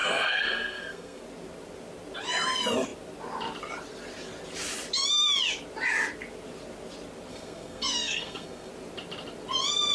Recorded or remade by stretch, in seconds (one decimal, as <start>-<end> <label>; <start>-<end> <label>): 0.0-1.2 remade; 1.2-7.3 recorded; 7.3-8.7 remade; 8.7-9.9 recorded